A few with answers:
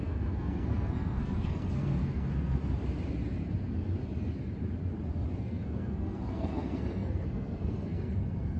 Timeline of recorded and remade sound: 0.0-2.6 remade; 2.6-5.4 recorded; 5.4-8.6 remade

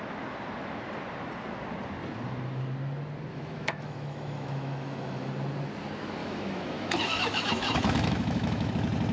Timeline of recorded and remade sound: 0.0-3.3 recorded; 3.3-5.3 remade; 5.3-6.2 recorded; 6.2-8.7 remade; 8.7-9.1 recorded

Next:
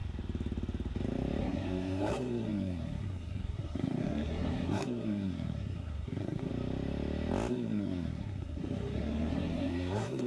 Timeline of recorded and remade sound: 0.0-1.4 recorded; 1.4-6.5 remade; 6.5-7.5 recorded; 7.5-10.3 remade

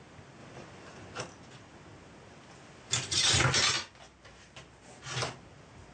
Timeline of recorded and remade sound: 0.0-5.9 recorded

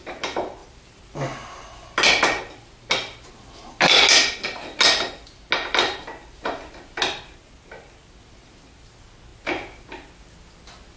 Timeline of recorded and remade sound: 0.0-11.0 recorded